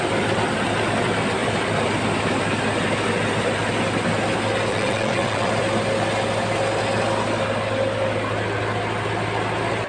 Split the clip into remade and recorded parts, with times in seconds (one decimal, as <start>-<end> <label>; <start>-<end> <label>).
0.0-4.7 recorded; 4.7-5.5 remade; 5.5-9.9 recorded